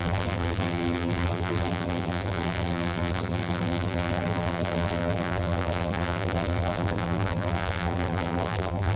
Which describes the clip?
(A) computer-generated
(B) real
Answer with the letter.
A